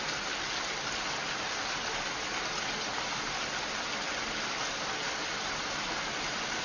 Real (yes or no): yes